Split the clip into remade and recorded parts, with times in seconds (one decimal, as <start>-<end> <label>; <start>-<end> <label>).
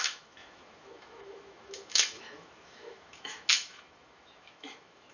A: 0.0-5.1 remade